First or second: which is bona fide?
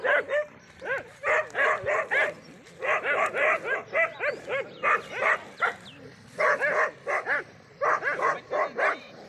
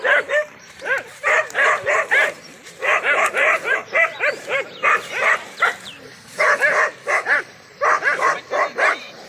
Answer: first